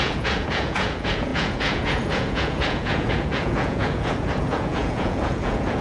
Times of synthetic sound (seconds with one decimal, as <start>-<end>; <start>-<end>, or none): 0.0-5.8